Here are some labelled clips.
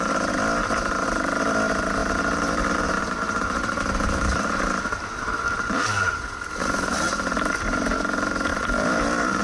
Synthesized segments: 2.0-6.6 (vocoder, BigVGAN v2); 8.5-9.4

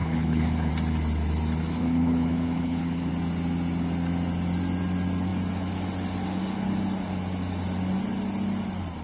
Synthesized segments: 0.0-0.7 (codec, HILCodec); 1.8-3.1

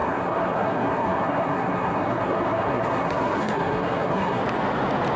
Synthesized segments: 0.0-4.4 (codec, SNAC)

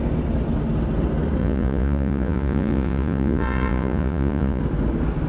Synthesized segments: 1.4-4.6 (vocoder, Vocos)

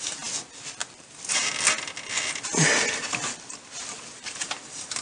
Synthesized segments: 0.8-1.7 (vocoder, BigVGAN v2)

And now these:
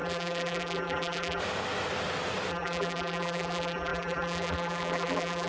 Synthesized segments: 0.0-1.4 (vocoder, BigVGAN v2); 2.5-5.5